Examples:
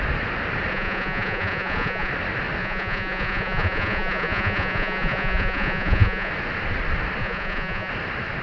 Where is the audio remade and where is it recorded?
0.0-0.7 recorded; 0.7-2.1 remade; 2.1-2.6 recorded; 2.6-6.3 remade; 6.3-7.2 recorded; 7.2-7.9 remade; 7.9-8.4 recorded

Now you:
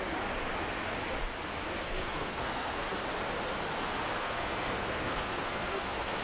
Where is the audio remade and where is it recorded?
0.0-1.8 recorded; 1.8-2.9 remade; 2.9-4.2 recorded; 4.2-6.2 remade